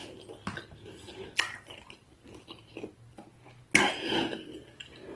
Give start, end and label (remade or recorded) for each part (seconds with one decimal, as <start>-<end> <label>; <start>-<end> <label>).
0.0-2.0 recorded; 2.0-2.9 remade; 2.9-5.2 recorded